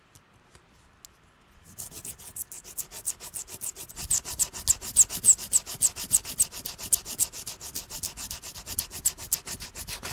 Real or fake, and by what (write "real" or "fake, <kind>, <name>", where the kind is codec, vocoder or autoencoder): real